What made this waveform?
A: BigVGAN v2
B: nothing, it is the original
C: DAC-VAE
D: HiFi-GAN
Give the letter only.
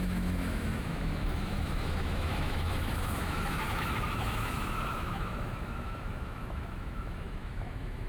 C